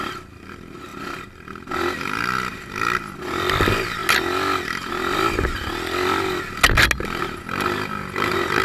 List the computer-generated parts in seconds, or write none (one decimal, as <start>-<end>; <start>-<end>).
none